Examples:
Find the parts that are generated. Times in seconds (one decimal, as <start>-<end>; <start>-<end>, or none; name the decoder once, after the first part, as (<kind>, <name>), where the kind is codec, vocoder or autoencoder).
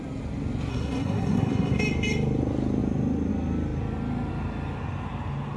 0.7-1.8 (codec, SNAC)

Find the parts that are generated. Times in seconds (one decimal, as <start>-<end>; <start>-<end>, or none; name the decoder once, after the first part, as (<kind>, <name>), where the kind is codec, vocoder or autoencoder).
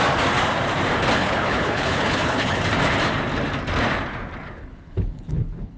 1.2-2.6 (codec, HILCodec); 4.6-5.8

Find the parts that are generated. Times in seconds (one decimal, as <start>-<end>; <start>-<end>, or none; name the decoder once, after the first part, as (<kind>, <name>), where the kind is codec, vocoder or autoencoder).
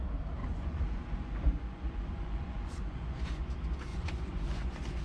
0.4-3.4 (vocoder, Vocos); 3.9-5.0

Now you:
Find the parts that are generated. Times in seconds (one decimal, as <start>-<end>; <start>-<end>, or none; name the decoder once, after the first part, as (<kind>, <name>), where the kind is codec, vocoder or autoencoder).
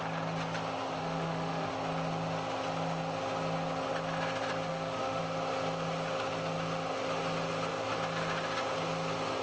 1.0-1.7 (autoencoder, DAC-VAE); 4.7-5.2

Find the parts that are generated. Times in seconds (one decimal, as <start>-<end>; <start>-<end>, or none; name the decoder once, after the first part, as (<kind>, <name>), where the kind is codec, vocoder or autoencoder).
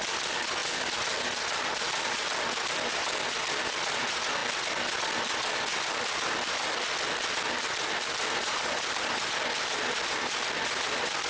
none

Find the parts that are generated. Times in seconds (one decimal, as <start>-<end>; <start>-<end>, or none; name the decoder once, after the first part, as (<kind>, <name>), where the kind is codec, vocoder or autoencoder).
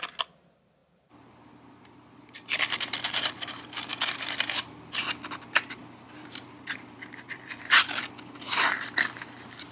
3.9-4.5 (vocoder, BigVGAN v2); 5.8-8.0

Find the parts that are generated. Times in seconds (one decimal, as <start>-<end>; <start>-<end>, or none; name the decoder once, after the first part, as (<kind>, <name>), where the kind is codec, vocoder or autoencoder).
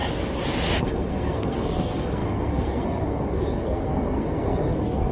0.8-5.1 (codec, SNAC)